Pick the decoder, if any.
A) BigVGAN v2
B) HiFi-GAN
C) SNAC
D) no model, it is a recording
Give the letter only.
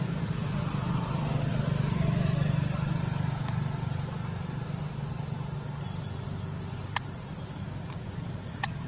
D